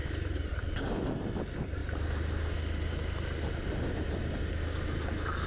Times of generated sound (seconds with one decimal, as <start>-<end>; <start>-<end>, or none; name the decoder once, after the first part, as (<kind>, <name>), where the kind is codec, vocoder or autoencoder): none